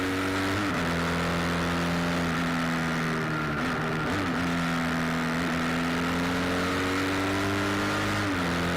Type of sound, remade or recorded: recorded